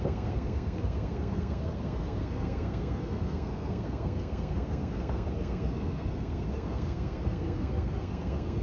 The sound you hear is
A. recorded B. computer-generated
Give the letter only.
B